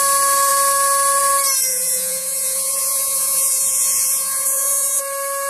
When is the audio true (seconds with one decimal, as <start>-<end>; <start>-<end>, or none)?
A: 0.0-1.7; 5.0-5.5